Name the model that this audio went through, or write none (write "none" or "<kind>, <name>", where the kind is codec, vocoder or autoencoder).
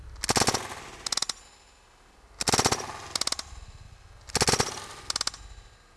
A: none